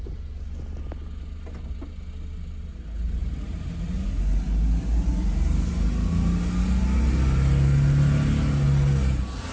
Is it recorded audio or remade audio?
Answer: recorded